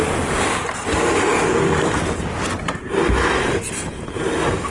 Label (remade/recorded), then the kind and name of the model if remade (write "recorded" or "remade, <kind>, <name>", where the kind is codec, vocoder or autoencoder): recorded